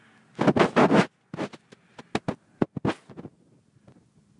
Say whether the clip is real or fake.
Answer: real